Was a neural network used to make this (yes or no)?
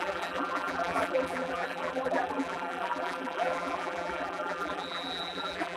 yes